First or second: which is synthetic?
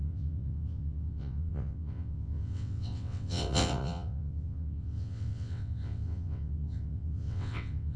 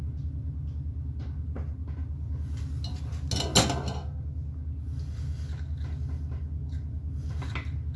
first